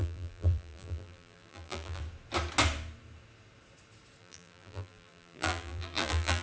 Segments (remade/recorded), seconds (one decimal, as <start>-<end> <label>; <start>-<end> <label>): 0.0-2.0 remade; 2.0-4.2 recorded; 4.2-6.4 remade